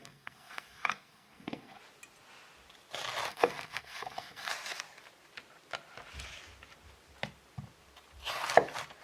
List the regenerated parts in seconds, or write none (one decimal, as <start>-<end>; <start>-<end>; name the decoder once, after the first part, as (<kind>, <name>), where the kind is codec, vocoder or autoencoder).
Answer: 0.0-1.8 (codec, SNAC); 3.3-4.5